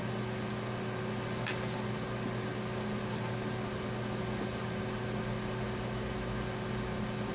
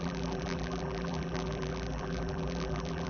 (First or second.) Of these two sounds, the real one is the first